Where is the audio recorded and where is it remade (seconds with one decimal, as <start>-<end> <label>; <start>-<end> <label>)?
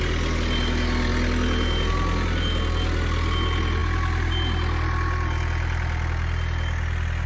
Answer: 0.0-7.3 recorded